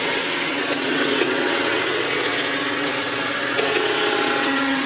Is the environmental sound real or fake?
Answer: fake